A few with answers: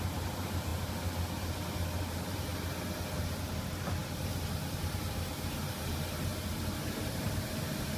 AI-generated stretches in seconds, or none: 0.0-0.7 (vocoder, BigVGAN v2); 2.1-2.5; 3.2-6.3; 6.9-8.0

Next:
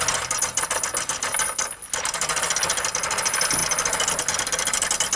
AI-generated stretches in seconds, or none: none